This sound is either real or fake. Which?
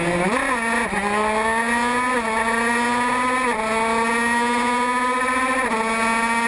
real